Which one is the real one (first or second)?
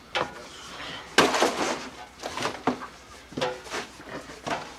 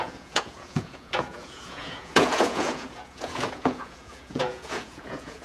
first